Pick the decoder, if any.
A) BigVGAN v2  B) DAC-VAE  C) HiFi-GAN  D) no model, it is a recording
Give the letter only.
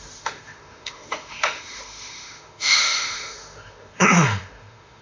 B